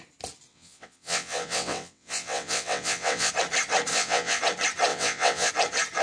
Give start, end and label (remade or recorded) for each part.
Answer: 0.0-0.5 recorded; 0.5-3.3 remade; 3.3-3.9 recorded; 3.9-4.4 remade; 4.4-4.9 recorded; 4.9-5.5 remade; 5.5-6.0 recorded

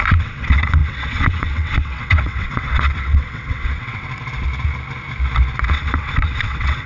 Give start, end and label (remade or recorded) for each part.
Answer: 0.0-4.1 remade; 4.1-5.7 recorded; 5.7-6.9 remade